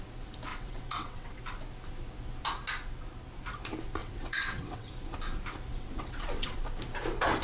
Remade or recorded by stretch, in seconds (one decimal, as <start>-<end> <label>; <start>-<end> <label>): 0.0-0.5 recorded; 0.5-1.4 remade; 1.4-4.0 recorded; 4.0-4.9 remade; 4.9-5.7 recorded; 5.7-6.6 remade; 6.6-7.4 recorded